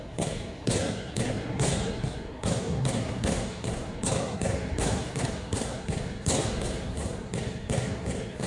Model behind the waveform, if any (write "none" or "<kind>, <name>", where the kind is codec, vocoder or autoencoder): codec, SNAC